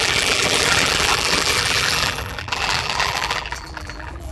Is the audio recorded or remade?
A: remade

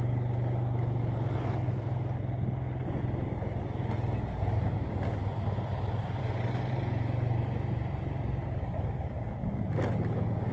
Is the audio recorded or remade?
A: recorded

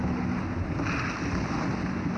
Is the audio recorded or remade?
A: recorded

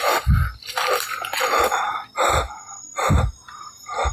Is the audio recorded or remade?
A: recorded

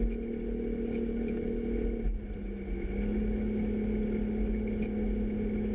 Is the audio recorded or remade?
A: recorded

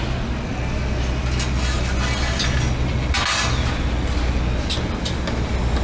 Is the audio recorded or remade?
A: recorded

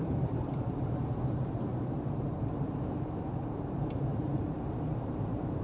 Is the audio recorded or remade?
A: remade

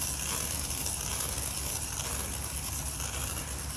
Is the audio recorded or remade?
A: recorded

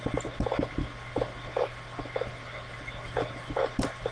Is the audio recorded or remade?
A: recorded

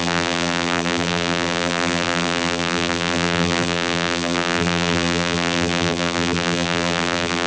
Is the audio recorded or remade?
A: remade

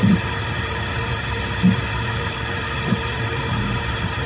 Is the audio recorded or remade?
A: remade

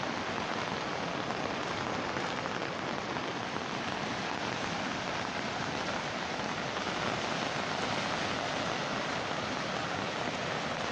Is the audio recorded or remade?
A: recorded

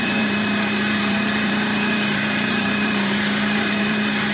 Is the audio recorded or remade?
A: remade